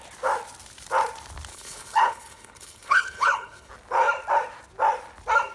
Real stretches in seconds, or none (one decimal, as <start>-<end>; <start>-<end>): 0.0-1.5; 3.7-5.5